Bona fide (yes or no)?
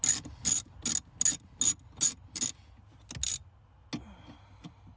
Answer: yes